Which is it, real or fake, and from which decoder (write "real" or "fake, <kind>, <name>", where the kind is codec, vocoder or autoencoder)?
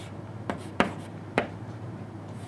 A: fake, vocoder, BigVGAN v2